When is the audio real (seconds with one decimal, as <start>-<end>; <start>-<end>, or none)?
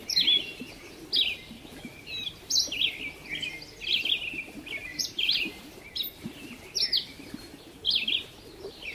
0.0-1.9; 2.5-4.9; 5.8-8.9